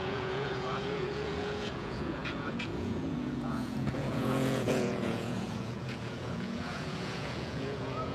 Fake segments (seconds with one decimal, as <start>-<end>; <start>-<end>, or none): 0.0-8.1